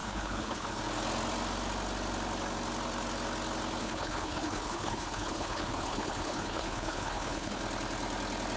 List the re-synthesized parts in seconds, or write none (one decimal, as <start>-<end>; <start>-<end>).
0.0-0.8; 3.8-7.6